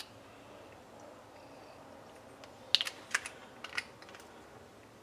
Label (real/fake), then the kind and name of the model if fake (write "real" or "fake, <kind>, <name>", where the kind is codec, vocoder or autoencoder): real